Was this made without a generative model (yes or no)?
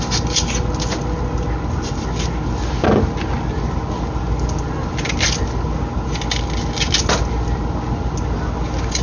yes